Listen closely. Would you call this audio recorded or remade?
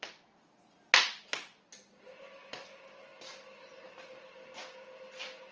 recorded